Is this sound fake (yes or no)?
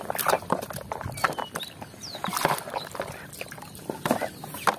no